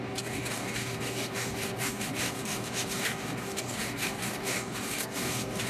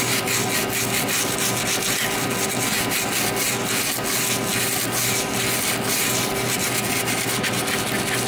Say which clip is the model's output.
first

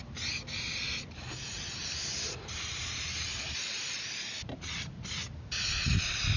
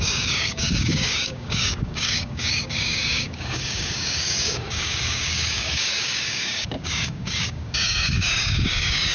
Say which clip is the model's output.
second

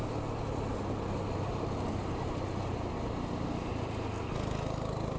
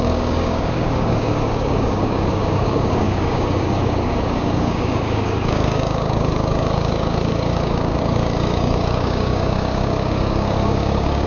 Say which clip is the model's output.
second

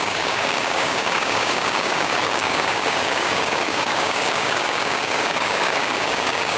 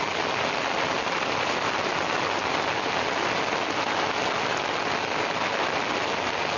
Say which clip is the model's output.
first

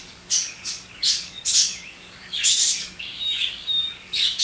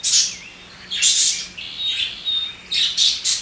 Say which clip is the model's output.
first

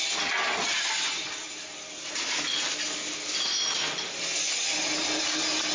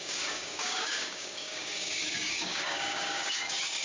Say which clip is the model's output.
second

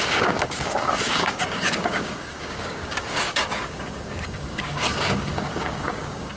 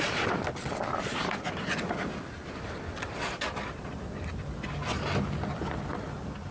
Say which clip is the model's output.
first